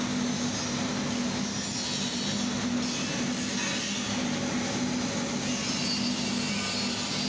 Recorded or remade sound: recorded